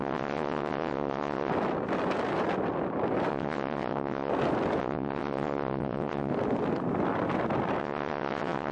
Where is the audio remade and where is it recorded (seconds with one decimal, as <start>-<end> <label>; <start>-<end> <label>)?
0.0-1.5 remade; 1.5-3.3 recorded; 3.3-4.3 remade; 4.3-4.8 recorded; 4.8-6.3 remade; 6.3-7.8 recorded; 7.8-8.7 remade